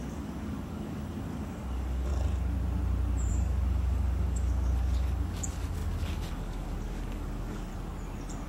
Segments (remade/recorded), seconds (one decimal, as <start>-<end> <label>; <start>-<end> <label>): 0.0-2.1 remade; 2.1-3.3 recorded; 3.3-7.7 remade; 7.7-8.5 recorded